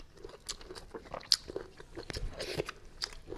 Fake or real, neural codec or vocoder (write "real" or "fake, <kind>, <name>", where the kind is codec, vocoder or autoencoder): real